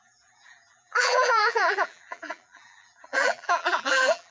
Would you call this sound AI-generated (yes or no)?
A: yes